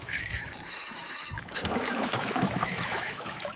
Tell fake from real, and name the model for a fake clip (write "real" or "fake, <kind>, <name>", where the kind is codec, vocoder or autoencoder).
fake, autoencoder, DAC-VAE